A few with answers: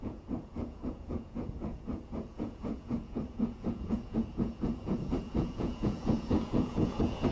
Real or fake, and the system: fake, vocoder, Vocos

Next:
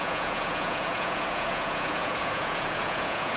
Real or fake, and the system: fake, vocoder, Vocos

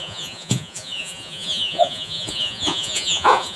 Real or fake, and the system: fake, vocoder, Vocos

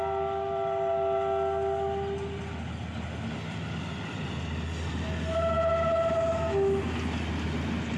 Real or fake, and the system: real